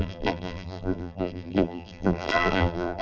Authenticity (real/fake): fake